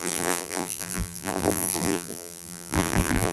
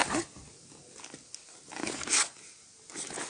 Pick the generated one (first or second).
first